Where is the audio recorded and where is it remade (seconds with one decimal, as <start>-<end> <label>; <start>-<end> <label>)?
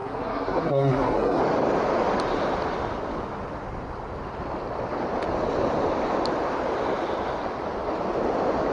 0.0-1.4 remade; 1.4-8.7 recorded